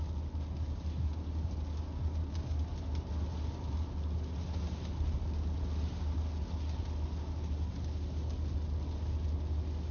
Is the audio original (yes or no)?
yes